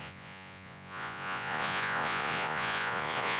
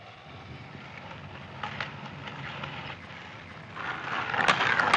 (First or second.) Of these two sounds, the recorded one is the second